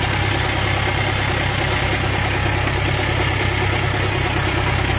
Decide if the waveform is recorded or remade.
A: recorded